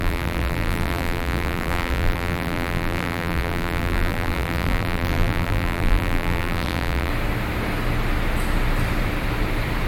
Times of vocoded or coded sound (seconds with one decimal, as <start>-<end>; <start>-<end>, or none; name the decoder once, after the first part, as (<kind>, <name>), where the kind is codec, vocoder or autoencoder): 0.0-7.1 (vocoder, BigVGAN v2)